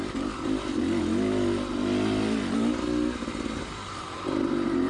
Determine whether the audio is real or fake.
real